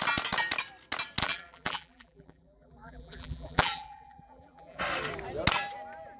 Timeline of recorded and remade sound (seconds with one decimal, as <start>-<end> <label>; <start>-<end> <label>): 0.0-1.2 recorded; 1.2-4.8 remade; 4.8-6.2 recorded